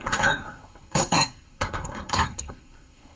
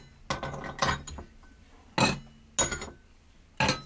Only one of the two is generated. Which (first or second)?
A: first